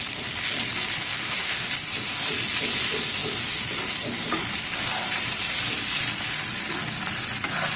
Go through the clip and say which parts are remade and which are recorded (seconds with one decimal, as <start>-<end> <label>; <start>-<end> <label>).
0.0-1.2 recorded; 1.2-1.7 remade; 1.7-7.8 recorded